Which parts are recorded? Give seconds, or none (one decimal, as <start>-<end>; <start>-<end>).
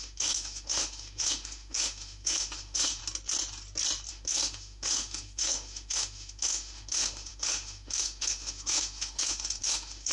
3.0-4.1